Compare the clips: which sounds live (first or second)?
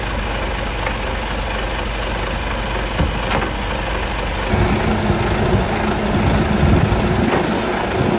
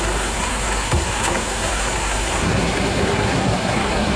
first